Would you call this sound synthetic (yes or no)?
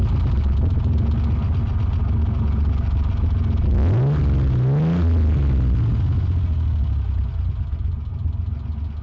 no